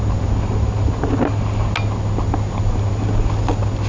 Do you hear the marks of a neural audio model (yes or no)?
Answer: no